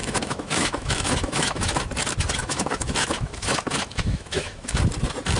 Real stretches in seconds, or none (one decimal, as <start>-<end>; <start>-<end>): 1.8-2.4; 4.8-5.4